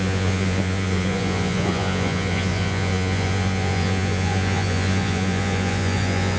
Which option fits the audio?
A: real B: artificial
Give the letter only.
B